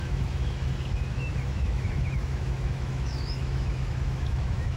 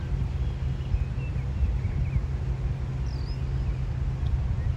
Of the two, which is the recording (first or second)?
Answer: second